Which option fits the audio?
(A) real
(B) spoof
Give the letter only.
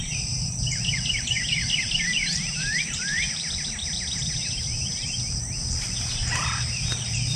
B